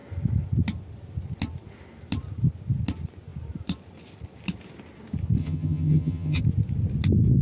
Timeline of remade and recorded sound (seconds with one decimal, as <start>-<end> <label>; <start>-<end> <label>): 0.0-5.4 recorded; 5.4-6.4 remade; 6.4-7.4 recorded